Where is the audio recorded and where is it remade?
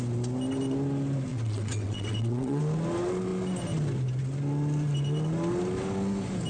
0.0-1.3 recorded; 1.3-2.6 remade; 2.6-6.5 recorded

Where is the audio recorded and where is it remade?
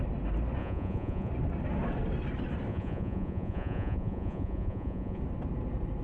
0.0-0.6 recorded; 0.6-1.3 remade; 1.3-2.7 recorded; 2.7-5.2 remade; 5.2-6.0 recorded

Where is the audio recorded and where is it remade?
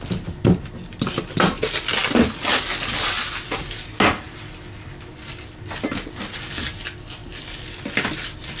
0.0-8.6 recorded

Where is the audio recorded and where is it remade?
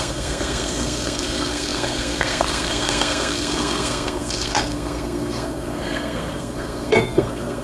0.0-7.6 remade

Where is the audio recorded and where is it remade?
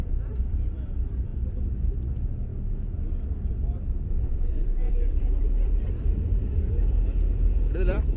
0.0-1.3 remade; 1.3-2.1 recorded; 2.1-2.5 remade; 2.5-3.5 recorded; 3.5-6.1 remade; 6.1-7.0 recorded; 7.0-8.2 remade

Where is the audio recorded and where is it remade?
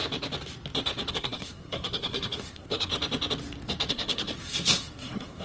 0.0-1.1 recorded; 1.1-2.9 remade; 2.9-3.9 recorded; 3.9-5.4 remade